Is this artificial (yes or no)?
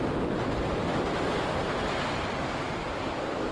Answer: no